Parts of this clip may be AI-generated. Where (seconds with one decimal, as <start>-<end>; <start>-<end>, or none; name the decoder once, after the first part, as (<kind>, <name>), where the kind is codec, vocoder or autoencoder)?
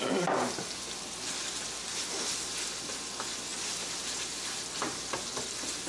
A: none